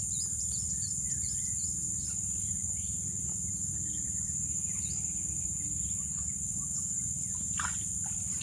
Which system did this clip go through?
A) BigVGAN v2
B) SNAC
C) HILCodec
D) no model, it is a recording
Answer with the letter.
D